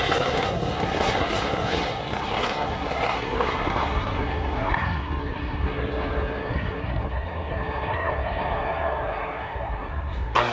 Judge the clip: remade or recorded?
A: remade